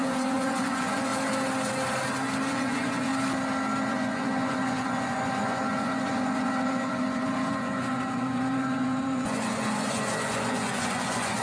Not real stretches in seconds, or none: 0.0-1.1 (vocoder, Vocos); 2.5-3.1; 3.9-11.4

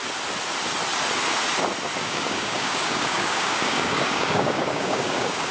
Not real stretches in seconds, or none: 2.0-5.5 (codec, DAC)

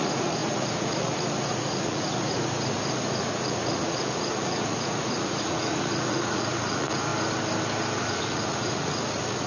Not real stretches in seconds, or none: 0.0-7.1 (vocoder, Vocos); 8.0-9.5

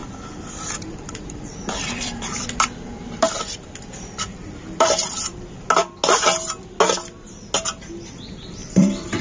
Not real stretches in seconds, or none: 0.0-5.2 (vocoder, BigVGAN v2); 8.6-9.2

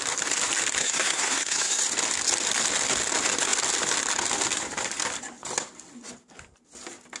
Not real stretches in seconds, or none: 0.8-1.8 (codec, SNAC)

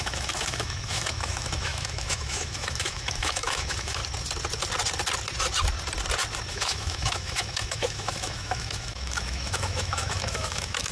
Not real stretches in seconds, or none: 0.0-4.0 (autoencoder, DAC-VAE); 6.5-10.9

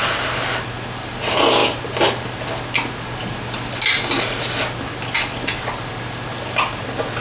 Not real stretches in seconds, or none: none